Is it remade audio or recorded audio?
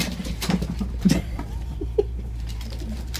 remade